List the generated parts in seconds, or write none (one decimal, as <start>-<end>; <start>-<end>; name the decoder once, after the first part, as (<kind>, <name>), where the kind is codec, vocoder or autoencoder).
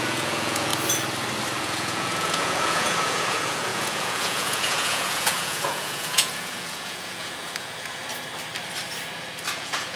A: 0.0-0.7 (vocoder, Vocos); 1.6-8.0; 9.5-10.0